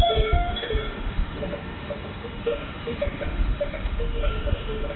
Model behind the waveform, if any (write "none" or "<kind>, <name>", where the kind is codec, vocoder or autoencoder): autoencoder, DAC-VAE